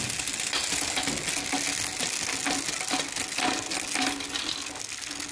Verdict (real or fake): real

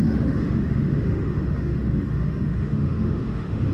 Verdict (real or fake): fake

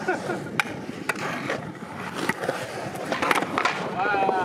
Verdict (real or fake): real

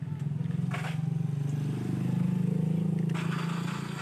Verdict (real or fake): real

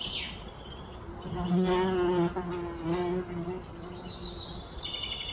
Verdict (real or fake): real